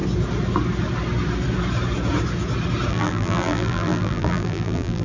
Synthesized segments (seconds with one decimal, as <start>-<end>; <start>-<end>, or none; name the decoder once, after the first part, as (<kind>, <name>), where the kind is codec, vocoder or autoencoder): 2.9-5.0 (vocoder, BigVGAN v2)